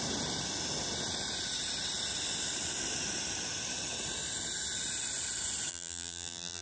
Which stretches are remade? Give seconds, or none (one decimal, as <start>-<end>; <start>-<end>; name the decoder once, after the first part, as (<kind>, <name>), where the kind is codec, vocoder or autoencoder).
5.7-6.6 (vocoder, BigVGAN v2)